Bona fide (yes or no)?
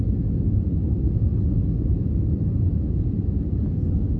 yes